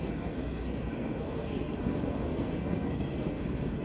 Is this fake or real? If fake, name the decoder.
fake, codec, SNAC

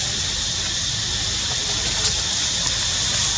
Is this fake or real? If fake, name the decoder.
real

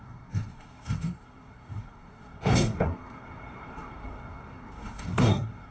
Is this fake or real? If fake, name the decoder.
fake, codec, SNAC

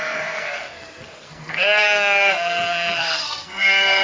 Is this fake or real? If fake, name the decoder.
fake, codec, SNAC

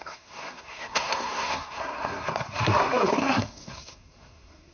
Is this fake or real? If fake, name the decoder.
fake, codec, SNAC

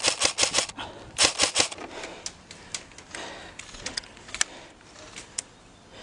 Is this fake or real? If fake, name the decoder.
real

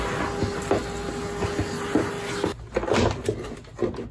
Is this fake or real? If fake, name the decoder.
real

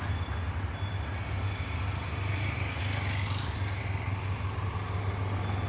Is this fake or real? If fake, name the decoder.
real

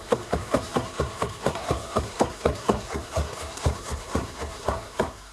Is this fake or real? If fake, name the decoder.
fake, codec, SNAC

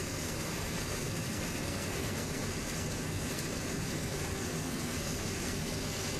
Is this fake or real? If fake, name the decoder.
fake, codec, SNAC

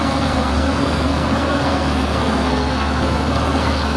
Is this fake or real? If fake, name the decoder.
fake, codec, SNAC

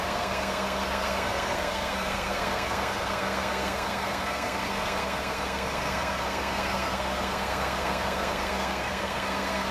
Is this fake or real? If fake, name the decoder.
fake, codec, SNAC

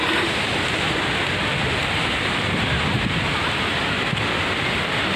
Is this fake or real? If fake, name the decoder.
real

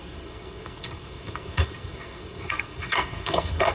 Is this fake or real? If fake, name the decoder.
fake, codec, SNAC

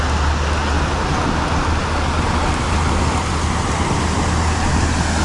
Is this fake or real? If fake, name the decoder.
real